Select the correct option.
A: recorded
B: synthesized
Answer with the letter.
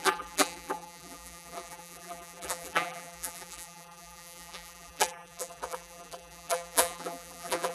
B